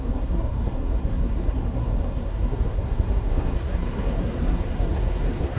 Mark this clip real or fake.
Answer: fake